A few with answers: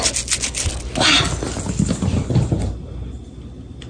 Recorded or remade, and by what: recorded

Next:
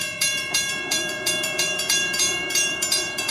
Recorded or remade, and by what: remade, vocoder, BigVGAN v2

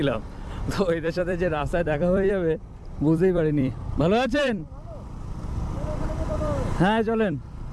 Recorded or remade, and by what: remade, vocoder, BigVGAN v2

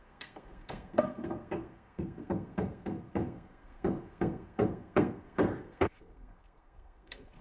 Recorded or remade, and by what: remade, codec, SNAC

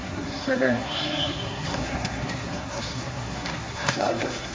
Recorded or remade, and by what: remade, codec, SNAC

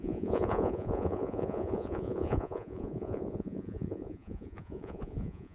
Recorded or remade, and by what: remade, vocoder, Vocos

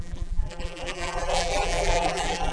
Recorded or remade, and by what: remade, vocoder, BigVGAN v2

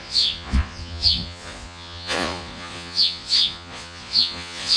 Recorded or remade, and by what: remade, vocoder, Vocos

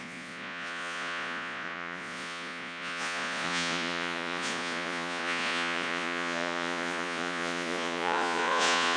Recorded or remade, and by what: remade, vocoder, Vocos